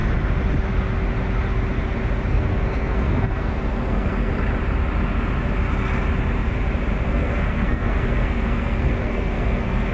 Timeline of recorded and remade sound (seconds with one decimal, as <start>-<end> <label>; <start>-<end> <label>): 0.0-2.3 recorded; 2.3-4.3 remade; 4.3-7.0 recorded; 7.0-9.9 remade